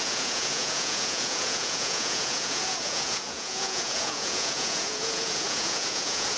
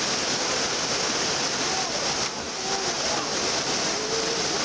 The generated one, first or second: first